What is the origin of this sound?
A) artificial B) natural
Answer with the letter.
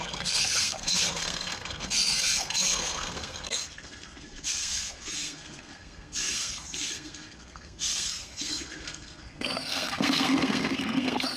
A